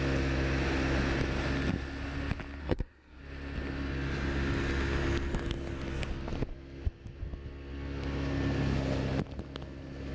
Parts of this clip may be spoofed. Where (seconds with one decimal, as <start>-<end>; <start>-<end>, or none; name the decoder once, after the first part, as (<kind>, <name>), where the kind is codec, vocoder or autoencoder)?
2.6-3.2 (codec, SNAC)

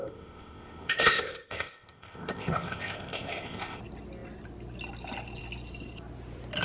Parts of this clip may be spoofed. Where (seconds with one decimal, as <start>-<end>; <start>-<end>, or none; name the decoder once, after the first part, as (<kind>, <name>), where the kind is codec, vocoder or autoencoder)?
0.0-3.8 (codec, ZipCodec)

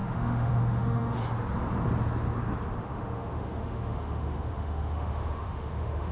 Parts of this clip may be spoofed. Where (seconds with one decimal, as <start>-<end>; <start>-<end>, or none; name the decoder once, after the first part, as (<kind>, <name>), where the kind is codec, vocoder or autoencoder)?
0.0-1.2 (autoencoder, DAC-VAE); 2.8-6.1

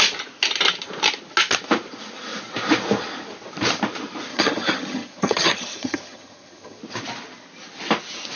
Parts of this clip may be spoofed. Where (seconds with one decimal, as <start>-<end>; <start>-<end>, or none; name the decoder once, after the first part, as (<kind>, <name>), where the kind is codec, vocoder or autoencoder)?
4.3-6.8 (vocoder, HiFi-GAN)

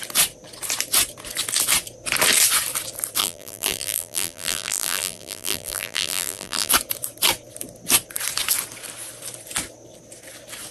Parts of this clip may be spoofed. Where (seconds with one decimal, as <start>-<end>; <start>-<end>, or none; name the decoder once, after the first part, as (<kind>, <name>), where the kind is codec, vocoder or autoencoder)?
3.2-6.7 (vocoder, BigVGAN v2)

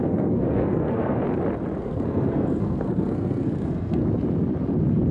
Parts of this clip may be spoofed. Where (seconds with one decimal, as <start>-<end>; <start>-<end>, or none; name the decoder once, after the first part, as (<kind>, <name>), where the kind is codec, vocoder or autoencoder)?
0.0-1.2 (codec, SNAC); 1.8-4.0

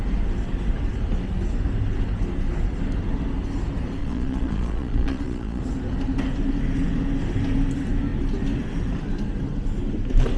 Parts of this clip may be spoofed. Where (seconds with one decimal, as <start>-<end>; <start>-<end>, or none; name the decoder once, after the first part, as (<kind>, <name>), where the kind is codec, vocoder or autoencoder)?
4.0-5.6 (vocoder, Vocos)

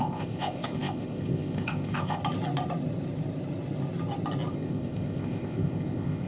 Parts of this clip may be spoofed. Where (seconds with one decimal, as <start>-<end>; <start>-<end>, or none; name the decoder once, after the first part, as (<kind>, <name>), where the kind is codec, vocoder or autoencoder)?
0.0-2.2 (codec, ZipCodec); 4.5-6.3